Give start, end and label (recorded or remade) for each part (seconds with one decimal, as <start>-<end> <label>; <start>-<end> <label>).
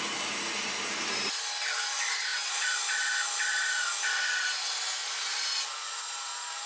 0.0-6.7 recorded